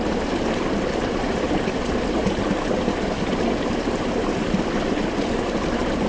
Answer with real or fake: real